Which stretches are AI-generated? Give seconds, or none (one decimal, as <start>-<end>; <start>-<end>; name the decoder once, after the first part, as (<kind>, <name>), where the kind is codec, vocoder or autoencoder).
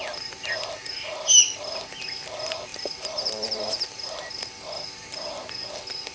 2.7-4.1 (vocoder, BigVGAN v2)